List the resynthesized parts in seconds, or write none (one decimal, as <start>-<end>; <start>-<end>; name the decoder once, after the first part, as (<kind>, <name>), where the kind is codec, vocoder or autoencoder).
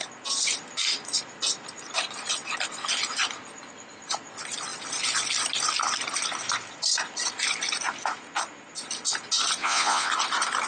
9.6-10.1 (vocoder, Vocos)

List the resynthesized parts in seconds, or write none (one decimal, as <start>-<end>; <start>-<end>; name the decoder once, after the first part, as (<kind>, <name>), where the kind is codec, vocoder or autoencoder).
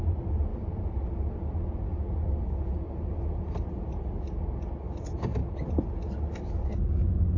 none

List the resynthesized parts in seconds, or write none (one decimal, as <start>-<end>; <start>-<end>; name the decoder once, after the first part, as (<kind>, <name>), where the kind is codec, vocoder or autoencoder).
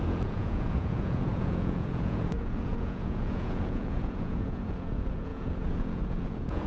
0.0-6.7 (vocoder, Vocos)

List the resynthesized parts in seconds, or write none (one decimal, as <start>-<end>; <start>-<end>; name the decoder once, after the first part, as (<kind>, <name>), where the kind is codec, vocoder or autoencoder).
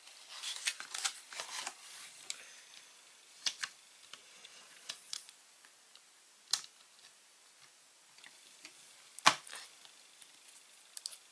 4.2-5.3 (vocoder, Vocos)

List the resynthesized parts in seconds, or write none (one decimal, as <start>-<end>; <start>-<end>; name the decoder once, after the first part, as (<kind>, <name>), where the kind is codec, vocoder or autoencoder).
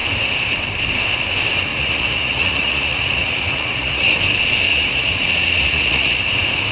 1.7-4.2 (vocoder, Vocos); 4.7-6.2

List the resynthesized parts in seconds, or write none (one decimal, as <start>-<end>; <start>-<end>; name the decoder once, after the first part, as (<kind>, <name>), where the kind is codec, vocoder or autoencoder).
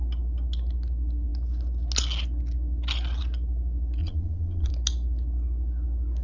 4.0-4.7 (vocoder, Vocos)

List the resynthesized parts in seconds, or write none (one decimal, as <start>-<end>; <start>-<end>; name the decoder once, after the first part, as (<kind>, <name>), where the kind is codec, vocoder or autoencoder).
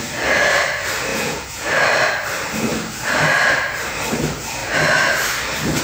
1.1-1.7 (vocoder, Vocos)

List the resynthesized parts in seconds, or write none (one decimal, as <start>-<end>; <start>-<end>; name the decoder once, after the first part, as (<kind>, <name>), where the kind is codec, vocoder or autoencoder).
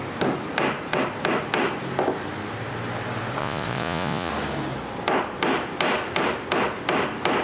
3.4-4.3 (vocoder, Vocos)